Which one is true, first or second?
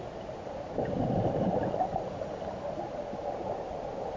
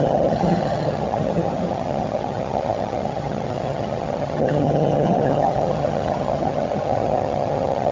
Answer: first